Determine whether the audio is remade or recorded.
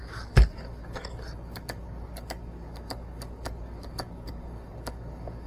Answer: remade